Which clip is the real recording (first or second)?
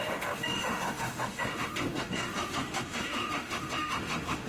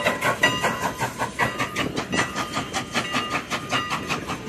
second